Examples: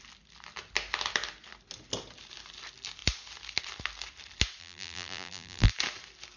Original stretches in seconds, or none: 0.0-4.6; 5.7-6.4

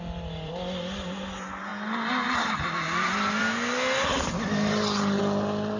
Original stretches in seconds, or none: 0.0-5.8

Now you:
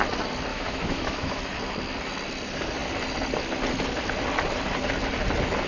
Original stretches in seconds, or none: 0.0-0.5; 1.4-5.7

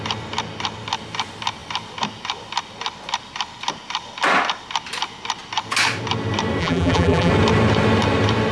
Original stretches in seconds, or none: 0.0-6.6; 7.3-8.5